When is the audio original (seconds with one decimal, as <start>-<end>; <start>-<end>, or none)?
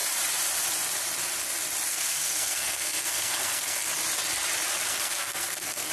0.0-1.9; 3.9-4.9